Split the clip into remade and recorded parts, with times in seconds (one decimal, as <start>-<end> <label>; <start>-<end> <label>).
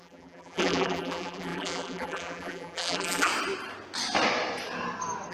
0.0-3.3 remade; 3.3-5.3 recorded